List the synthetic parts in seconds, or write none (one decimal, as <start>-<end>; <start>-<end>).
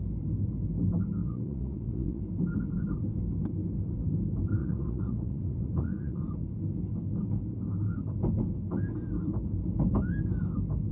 1.2-2.2; 4.6-6.2